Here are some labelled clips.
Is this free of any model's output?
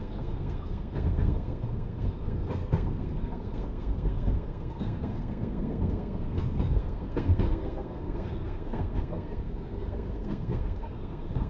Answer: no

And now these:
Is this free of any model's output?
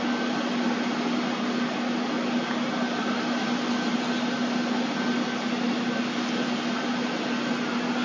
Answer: yes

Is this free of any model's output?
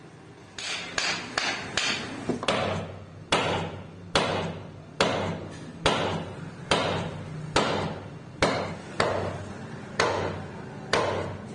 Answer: yes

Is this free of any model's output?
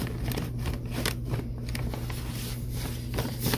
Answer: yes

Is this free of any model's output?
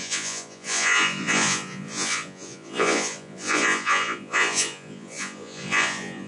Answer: no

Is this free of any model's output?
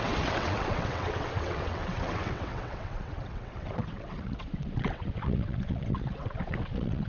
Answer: no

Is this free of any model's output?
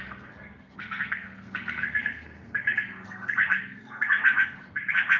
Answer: no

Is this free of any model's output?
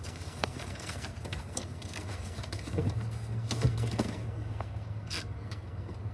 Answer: no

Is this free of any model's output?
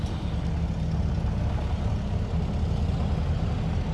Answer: yes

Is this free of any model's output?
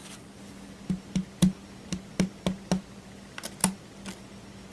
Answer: yes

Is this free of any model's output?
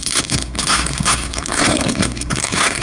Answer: no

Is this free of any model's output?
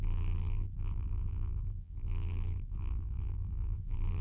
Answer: no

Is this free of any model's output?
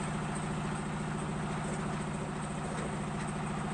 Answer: yes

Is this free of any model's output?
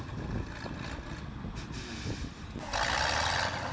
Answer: yes